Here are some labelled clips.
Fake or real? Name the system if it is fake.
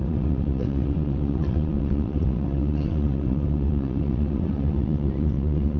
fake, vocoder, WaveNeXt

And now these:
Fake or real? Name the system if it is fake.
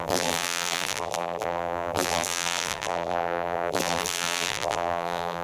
fake, vocoder, BigVGAN v2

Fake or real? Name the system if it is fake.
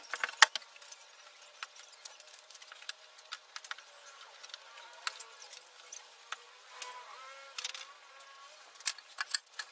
real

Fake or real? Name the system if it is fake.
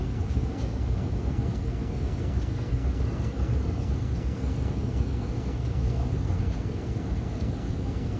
fake, codec, SNAC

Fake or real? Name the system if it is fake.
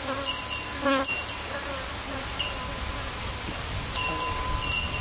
real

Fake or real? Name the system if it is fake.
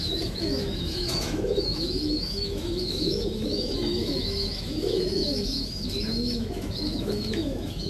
fake, autoencoder, DAC-VAE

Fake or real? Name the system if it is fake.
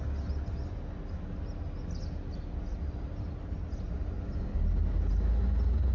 real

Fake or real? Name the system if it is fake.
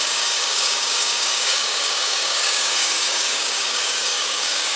fake, codec, DAC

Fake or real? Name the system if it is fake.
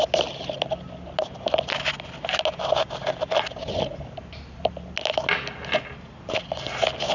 real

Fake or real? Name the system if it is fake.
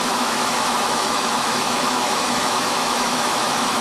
fake, autoencoder, DAC-VAE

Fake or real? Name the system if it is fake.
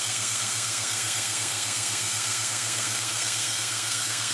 fake, codec, SNAC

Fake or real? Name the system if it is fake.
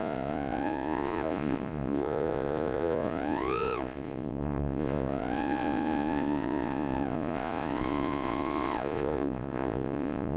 fake, vocoder, Vocos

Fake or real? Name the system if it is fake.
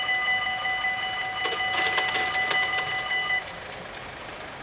real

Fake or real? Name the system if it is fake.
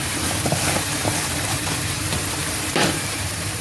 fake, vocoder, BigVGAN v2